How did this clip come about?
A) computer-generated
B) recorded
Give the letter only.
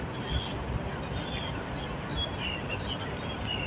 B